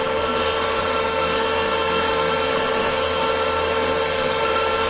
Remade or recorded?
remade